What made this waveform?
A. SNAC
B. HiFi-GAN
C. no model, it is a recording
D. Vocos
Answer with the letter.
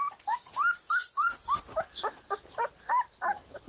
C